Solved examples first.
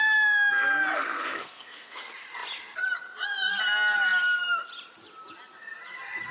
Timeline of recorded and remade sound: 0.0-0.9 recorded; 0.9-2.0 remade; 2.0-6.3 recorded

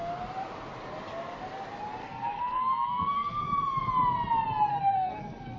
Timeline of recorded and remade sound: 0.0-2.0 recorded; 2.0-3.4 remade; 3.4-4.7 recorded; 4.7-5.6 remade